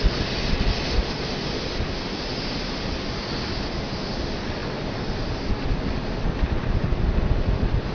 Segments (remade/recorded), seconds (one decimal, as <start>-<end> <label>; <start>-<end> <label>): 0.0-7.9 recorded